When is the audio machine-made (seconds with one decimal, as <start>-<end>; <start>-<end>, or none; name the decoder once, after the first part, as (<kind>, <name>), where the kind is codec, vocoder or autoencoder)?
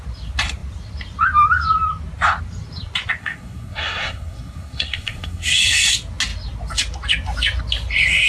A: 3.2-5.6 (codec, SNAC)